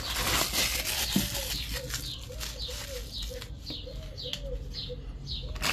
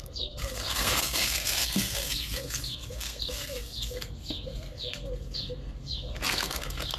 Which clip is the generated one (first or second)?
second